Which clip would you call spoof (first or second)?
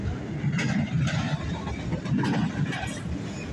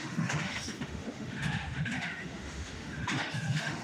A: second